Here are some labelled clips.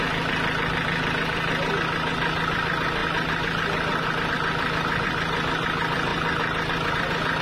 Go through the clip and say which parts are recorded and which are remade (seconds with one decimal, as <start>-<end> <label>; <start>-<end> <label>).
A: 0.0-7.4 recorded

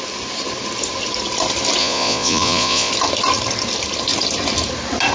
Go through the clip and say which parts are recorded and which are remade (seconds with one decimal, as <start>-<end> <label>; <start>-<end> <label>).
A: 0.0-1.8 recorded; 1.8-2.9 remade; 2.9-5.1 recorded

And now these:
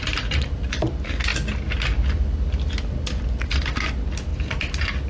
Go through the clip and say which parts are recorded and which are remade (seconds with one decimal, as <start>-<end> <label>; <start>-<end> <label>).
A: 0.0-5.1 recorded

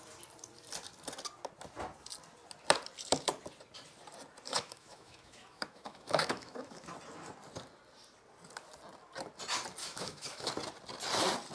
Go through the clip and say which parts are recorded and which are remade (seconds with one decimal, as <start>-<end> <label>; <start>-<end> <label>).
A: 0.0-4.5 recorded; 4.5-6.9 remade; 6.9-9.8 recorded; 9.8-10.5 remade; 10.5-11.5 recorded

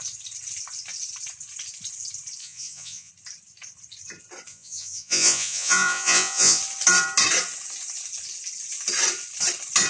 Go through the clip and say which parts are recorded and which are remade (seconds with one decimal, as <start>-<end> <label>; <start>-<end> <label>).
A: 0.0-2.4 recorded; 2.4-3.1 remade; 3.1-4.5 recorded; 4.5-6.6 remade; 6.6-9.9 recorded

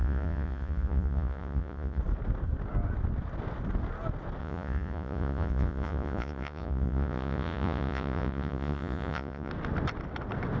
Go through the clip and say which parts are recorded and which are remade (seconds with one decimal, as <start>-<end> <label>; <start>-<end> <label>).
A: 0.0-2.0 remade; 2.0-4.4 recorded; 4.4-9.5 remade; 9.5-10.6 recorded

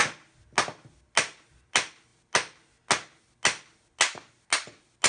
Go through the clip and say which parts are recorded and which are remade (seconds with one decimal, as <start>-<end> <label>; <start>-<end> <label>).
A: 0.0-5.1 recorded

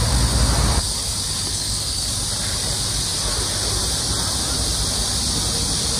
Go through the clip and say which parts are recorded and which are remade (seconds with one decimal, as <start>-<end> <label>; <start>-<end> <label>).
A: 0.0-1.5 recorded; 1.5-2.1 remade; 2.1-6.0 recorded